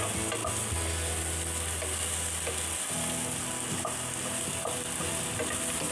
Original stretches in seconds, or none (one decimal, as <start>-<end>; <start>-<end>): 0.0-5.9

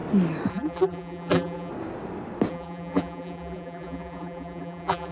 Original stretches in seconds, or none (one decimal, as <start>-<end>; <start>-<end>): 0.0-0.5; 1.7-2.5